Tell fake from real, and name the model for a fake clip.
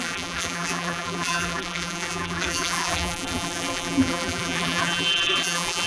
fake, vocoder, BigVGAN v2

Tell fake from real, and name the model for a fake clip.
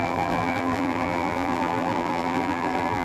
fake, vocoder, BigVGAN v2